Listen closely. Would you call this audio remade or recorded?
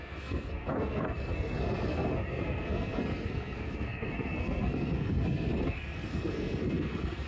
remade